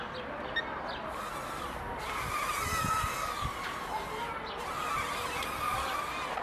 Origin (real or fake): real